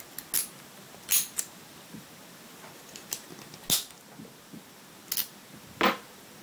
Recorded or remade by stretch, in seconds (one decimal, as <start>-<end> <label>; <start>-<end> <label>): 0.0-6.4 recorded